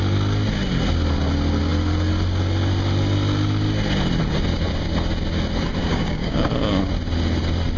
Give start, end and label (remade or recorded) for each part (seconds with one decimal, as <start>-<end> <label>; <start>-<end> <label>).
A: 0.0-5.8 recorded; 5.8-6.5 remade; 6.5-7.8 recorded